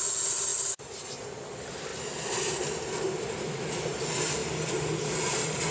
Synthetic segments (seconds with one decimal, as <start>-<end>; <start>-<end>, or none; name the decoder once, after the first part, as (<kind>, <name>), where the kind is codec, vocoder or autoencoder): none

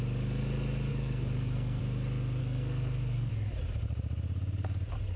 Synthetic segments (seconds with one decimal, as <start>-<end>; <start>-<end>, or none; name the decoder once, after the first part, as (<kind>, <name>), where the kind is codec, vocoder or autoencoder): 0.9-1.8 (codec, SNAC); 2.4-3.3

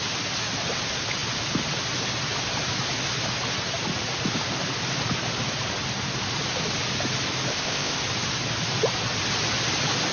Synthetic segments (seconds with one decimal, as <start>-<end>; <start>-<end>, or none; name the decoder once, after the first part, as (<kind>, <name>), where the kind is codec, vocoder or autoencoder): 7.5-8.0 (codec, ZipCodec)

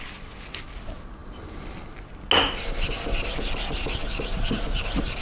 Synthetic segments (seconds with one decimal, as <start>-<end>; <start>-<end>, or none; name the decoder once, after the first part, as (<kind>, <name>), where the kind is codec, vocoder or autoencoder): none

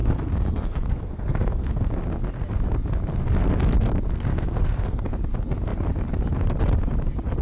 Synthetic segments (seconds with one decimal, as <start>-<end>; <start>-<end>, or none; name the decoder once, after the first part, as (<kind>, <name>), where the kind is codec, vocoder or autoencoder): 0.0-1.9 (codec, SNAC); 4.3-5.1

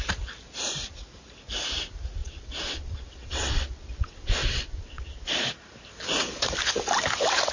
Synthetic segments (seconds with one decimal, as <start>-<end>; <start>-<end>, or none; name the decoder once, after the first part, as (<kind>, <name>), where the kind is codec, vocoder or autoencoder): 2.2-5.2 (vocoder, WaveNeXt)

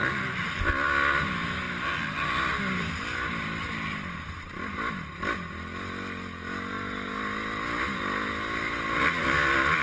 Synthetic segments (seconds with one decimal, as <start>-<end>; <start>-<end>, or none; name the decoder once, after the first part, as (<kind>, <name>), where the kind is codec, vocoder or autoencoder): none